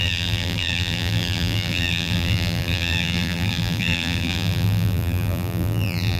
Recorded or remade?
remade